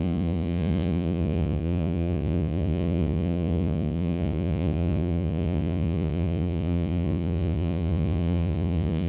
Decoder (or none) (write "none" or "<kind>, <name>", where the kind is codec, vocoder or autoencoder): vocoder, Vocos